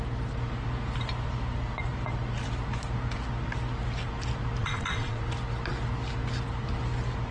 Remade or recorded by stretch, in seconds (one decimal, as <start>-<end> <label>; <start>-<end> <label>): 0.0-4.6 recorded; 4.6-5.2 remade; 5.2-7.3 recorded